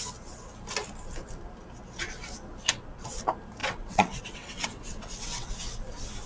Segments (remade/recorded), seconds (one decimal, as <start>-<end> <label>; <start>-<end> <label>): 0.0-3.6 recorded; 3.6-5.5 remade; 5.5-6.3 recorded